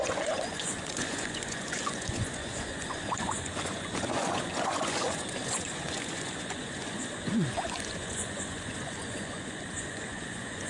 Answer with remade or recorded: remade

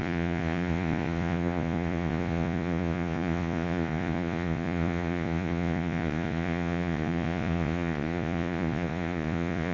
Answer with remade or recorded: remade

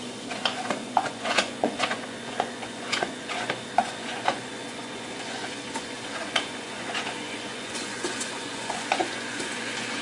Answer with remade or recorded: remade